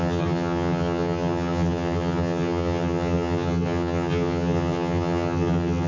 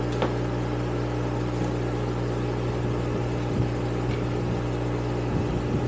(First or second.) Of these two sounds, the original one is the second